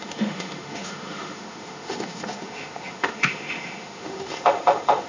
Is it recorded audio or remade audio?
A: remade